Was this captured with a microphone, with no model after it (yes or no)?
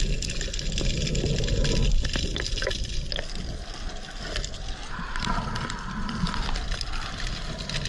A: yes